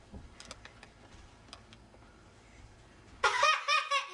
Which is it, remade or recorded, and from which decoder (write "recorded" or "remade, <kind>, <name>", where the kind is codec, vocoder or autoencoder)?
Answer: recorded